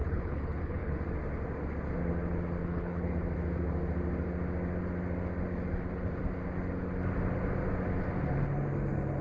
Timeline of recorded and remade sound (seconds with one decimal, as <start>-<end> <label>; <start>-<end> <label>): 0.0-1.0 remade; 1.0-2.6 recorded; 2.6-3.1 remade; 3.1-9.2 recorded